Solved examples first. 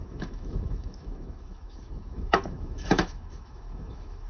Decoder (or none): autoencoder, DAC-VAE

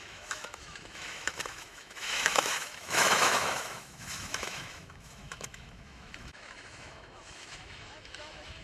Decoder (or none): autoencoder, DAC-VAE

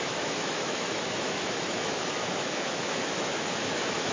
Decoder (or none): autoencoder, DAC-VAE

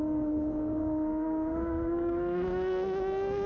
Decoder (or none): codec, SNAC